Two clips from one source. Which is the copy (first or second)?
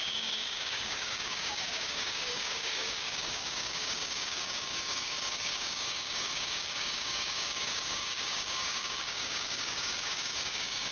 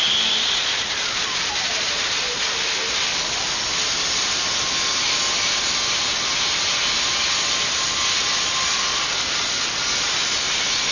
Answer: first